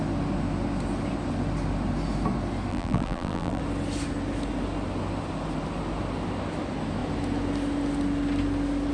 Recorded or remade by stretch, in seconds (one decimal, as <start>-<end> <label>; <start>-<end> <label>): 0.0-2.7 recorded; 2.7-3.6 remade; 3.6-8.9 recorded